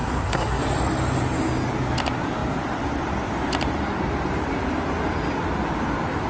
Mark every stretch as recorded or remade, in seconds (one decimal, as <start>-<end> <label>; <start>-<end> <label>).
0.0-0.6 remade; 0.6-6.3 recorded